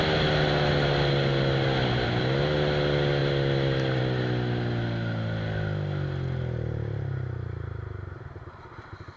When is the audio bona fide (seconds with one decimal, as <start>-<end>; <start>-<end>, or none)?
0.0-3.2; 4.0-9.2